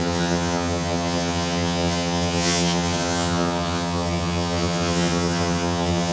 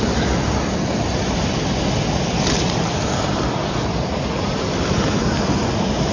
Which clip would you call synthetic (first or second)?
first